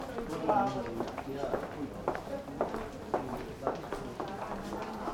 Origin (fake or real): real